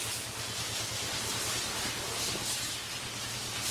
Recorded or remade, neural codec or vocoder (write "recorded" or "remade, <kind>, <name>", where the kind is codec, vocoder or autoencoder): recorded